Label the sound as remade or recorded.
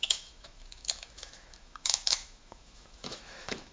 remade